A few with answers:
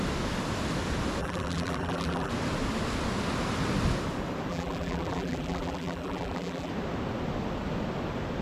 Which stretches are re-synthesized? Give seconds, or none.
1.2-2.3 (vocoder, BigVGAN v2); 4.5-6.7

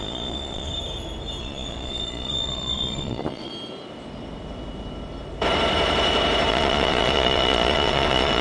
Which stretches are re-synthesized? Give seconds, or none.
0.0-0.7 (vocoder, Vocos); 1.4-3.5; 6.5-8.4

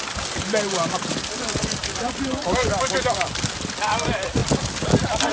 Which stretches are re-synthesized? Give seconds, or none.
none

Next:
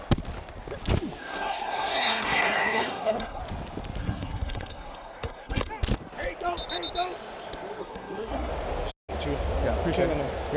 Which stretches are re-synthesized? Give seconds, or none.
1.2-3.4 (codec, SNAC); 4.0-5.7; 7.8-8.5